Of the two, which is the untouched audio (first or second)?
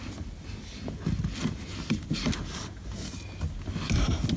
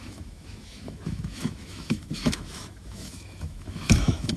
first